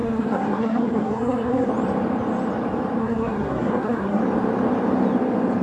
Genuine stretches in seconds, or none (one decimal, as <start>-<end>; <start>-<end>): 1.7-3.0; 4.2-5.6

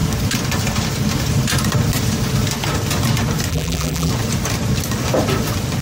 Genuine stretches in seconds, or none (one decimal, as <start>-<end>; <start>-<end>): 0.0-3.5; 4.1-5.8

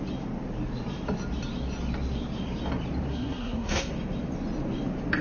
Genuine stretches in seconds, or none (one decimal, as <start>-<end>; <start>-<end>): 0.0-3.1; 3.9-5.2

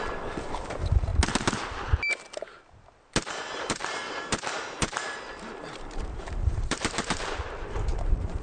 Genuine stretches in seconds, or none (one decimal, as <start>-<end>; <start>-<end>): 1.1-3.3

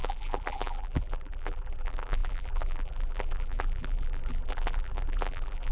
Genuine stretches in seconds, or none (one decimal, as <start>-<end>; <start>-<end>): none